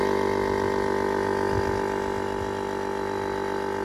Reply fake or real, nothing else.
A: real